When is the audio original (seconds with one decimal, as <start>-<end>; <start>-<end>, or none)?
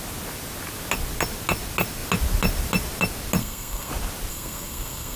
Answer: 0.0-3.4; 3.9-4.3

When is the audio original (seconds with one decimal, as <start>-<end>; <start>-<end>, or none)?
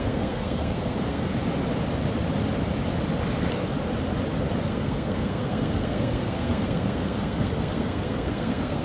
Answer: 1.3-4.6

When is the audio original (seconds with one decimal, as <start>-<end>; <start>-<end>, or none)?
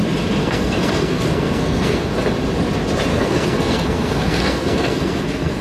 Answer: 0.0-0.4; 2.1-3.1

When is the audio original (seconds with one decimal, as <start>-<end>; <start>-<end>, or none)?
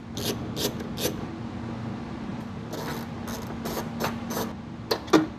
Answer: 0.0-5.4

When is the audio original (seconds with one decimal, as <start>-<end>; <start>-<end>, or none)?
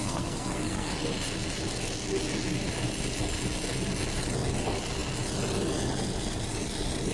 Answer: 0.9-7.1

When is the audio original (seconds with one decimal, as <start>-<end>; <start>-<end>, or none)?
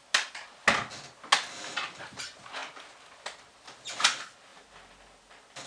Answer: 0.0-5.7